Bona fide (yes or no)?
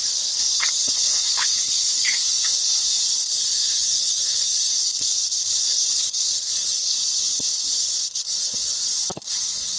no